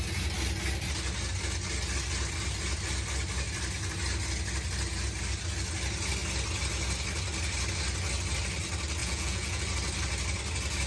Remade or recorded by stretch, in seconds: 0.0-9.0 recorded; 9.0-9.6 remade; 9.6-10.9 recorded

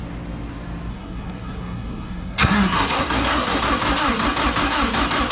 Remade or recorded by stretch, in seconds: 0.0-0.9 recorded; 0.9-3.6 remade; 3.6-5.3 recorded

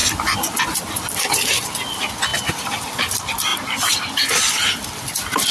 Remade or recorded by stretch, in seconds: 0.0-2.3 recorded; 2.3-3.0 remade; 3.0-5.5 recorded